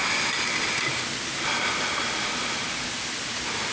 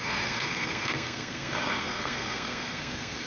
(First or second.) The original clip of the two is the first